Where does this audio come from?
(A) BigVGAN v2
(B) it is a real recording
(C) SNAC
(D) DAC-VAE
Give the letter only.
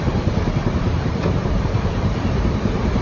A